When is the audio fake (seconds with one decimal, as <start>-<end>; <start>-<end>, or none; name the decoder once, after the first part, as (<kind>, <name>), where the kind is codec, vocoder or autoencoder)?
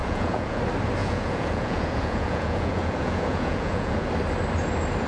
0.0-0.6 (vocoder, Vocos); 1.0-4.1